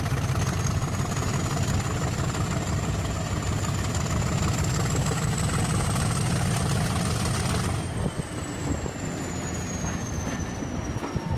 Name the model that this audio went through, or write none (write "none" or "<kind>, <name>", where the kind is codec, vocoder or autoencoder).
none